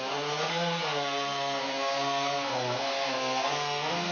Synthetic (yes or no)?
yes